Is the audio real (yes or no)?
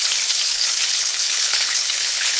no